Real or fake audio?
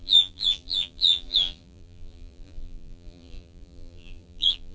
fake